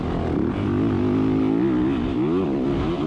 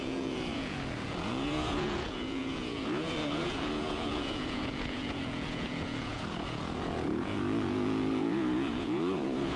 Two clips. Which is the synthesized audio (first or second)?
second